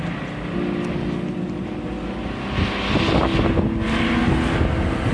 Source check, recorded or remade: recorded